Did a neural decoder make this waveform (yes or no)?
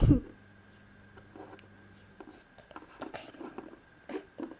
no